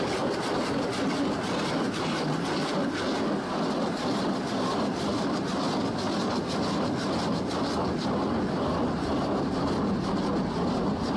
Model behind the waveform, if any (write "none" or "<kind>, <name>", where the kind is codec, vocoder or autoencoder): none